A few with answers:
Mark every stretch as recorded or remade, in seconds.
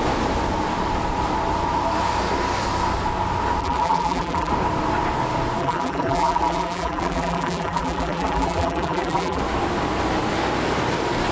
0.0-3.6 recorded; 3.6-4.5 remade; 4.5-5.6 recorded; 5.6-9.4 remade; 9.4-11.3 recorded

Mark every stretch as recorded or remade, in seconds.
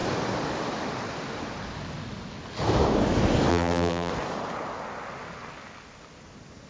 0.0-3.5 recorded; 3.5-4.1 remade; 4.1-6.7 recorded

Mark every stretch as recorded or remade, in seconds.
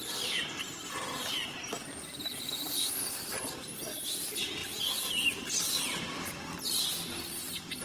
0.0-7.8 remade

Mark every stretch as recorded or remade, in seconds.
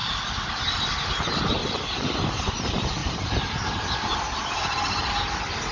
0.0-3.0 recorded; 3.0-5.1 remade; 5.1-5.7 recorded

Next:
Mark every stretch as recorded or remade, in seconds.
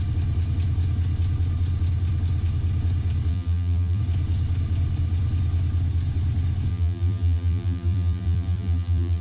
0.0-3.3 recorded; 3.3-4.0 remade; 4.0-6.7 recorded; 6.7-9.2 remade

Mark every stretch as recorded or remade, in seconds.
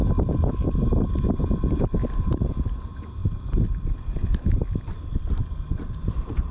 0.0-1.8 recorded; 1.8-3.2 remade; 3.2-5.2 recorded; 5.2-6.5 remade